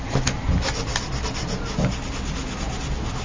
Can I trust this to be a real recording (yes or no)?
yes